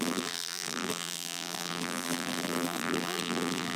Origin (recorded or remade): remade